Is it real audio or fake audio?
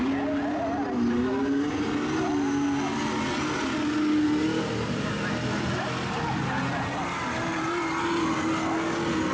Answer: real